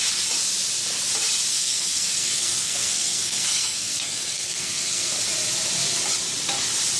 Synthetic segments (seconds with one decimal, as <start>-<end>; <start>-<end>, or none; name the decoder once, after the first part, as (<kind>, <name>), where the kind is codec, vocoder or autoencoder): 1.5-5.1 (codec, SNAC)